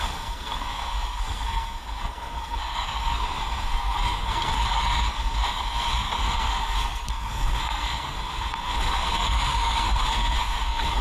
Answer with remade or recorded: remade